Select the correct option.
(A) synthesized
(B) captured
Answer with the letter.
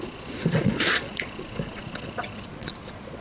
A